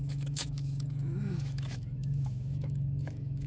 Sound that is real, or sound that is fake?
fake